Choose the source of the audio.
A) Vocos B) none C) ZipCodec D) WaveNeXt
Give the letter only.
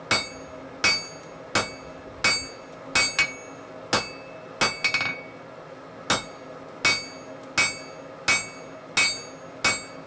B